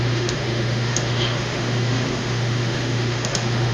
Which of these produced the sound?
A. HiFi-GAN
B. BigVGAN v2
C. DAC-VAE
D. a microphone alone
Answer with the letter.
C